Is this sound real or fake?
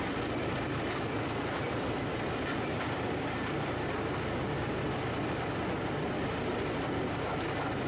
real